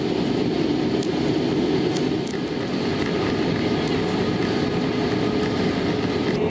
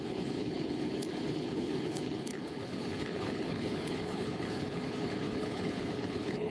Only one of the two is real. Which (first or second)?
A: first